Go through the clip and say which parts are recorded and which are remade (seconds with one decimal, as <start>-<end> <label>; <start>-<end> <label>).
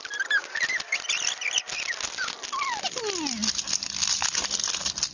0.0-5.1 recorded